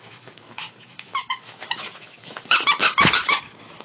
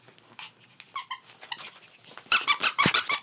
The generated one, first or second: first